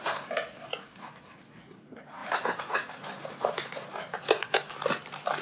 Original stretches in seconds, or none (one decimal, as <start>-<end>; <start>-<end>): 0.0-5.4